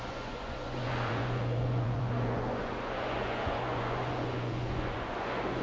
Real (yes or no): no